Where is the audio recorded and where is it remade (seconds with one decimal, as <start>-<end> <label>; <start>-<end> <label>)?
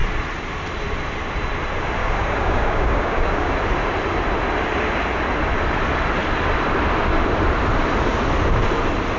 0.0-2.0 recorded; 2.0-3.5 remade; 3.5-9.2 recorded